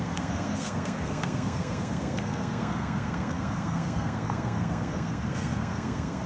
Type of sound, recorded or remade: remade